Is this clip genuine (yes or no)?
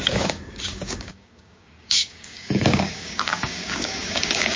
no